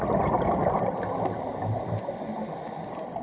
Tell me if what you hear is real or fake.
real